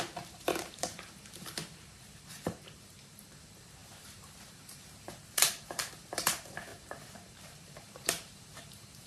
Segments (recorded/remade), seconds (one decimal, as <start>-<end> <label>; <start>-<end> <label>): 0.0-9.1 remade